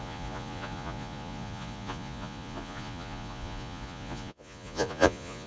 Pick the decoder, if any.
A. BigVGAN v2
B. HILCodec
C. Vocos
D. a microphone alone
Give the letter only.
C